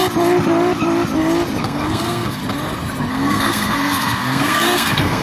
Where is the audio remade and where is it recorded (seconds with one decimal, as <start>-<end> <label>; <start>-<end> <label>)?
0.0-1.6 recorded; 1.6-2.4 remade; 2.4-3.1 recorded; 3.1-5.2 remade